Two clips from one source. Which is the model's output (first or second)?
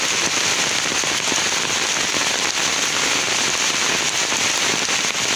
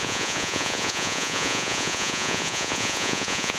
second